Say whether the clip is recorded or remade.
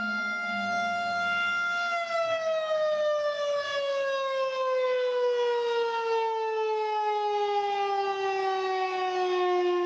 remade